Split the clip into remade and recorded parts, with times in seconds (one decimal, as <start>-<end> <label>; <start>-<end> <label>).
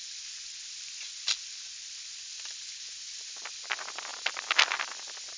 0.0-4.1 recorded; 4.1-4.9 remade; 4.9-5.4 recorded